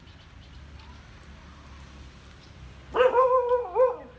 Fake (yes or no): no